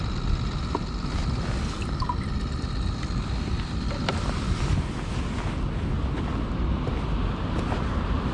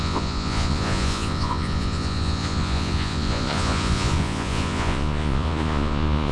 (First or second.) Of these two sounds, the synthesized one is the second